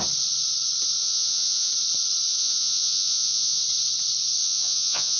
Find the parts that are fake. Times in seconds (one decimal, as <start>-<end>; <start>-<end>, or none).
1.0-1.7; 2.3-3.6; 4.4-5.2